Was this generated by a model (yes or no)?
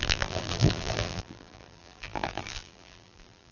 yes